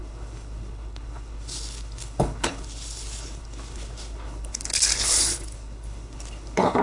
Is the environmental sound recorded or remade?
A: remade